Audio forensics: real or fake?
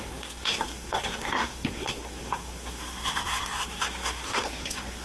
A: fake